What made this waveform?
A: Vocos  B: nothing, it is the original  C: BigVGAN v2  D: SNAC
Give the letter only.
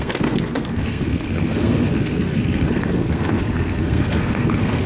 D